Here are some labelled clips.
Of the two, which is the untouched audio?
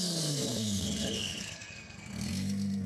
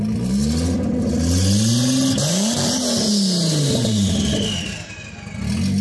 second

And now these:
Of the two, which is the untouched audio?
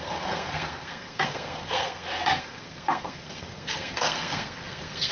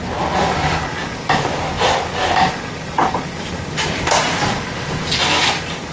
second